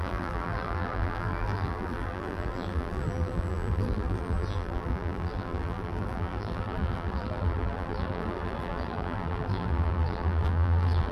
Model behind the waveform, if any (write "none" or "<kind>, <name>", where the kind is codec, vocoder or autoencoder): vocoder, BigVGAN v2